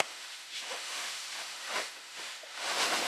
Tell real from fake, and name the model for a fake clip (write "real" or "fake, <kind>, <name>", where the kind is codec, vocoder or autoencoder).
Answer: fake, autoencoder, DAC-VAE